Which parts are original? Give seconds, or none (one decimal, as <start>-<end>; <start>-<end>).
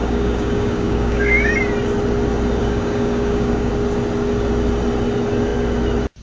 1.5-2.6; 3.7-6.2